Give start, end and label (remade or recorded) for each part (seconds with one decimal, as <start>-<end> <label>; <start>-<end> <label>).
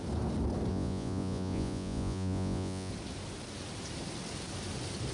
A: 0.0-0.7 recorded; 0.7-2.9 remade; 2.9-5.1 recorded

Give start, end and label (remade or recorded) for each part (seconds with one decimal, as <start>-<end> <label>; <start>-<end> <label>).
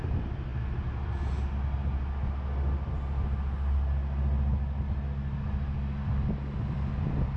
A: 0.0-7.4 recorded